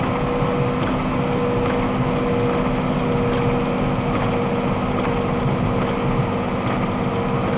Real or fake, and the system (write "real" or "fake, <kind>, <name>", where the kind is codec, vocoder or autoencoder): real